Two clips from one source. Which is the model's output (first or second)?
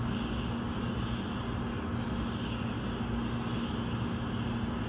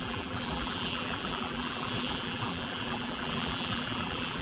second